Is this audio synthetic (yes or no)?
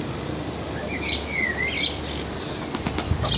no